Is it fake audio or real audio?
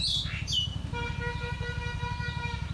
fake